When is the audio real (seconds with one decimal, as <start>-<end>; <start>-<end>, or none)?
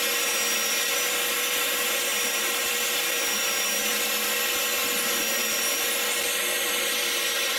0.0-2.1; 2.7-7.6